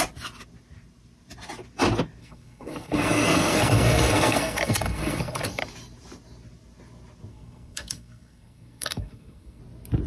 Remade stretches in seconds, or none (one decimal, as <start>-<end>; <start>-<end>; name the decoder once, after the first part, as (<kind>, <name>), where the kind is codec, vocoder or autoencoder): 2.2-5.6 (codec, SNAC); 7.3-9.6